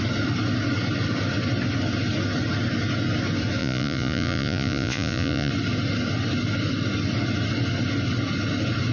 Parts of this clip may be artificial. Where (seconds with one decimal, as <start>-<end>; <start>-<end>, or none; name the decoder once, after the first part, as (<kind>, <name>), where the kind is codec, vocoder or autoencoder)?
3.6-5.5 (vocoder, Vocos)